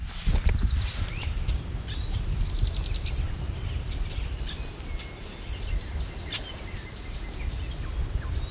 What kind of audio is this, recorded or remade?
recorded